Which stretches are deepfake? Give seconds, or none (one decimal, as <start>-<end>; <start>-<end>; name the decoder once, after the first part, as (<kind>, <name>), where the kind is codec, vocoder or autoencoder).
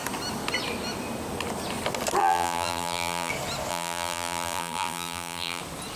2.2-3.3 (vocoder, BigVGAN v2); 3.7-5.6